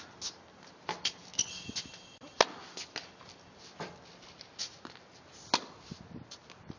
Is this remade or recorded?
recorded